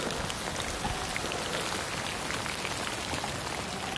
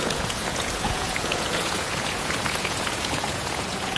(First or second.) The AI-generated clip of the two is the second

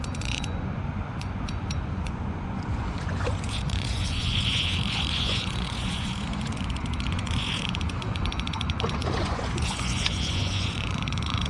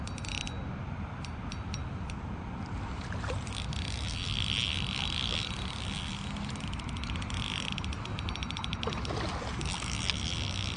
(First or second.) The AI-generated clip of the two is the first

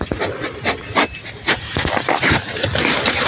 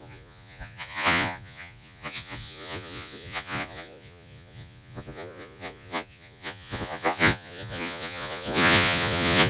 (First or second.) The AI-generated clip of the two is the second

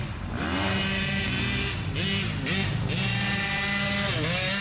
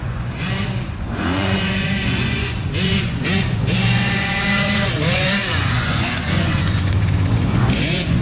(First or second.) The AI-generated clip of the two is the second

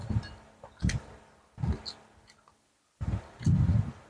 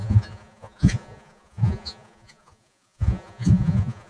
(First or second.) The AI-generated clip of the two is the second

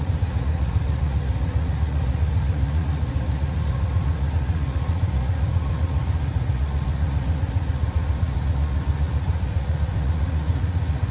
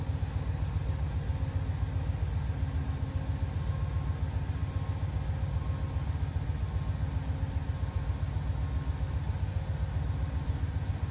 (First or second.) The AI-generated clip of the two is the first